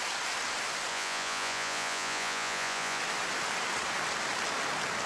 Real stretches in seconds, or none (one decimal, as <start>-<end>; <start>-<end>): 0.0-0.9; 3.0-5.1